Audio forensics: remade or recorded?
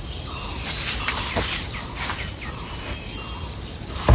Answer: recorded